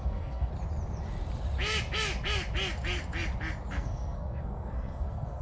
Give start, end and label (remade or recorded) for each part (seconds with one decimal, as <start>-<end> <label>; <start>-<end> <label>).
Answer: 0.0-0.5 remade; 0.5-3.7 recorded; 3.7-5.4 remade